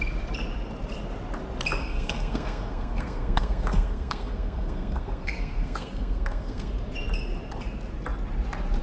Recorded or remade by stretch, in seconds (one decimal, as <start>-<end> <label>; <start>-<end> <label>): 0.0-1.8 recorded; 1.8-6.7 remade; 6.7-8.8 recorded